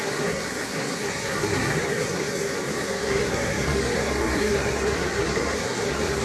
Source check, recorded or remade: remade